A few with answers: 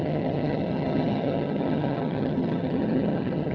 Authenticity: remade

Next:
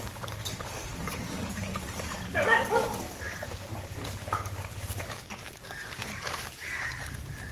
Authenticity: remade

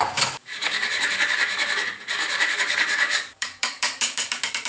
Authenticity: remade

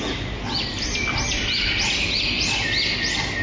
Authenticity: recorded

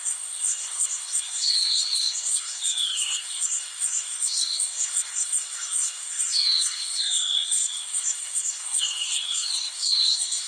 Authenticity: remade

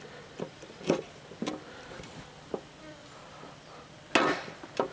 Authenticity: recorded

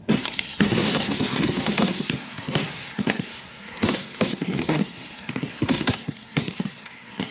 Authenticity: remade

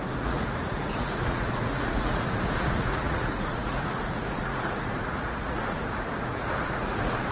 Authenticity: remade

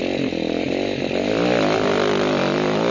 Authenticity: recorded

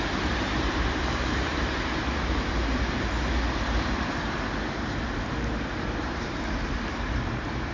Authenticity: remade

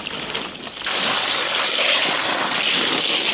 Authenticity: recorded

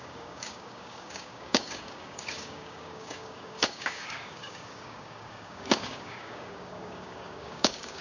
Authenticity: remade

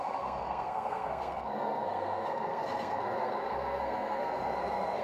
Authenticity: remade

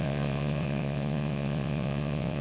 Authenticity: remade